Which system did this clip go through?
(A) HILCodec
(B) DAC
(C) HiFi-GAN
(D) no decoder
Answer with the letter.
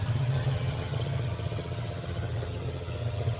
C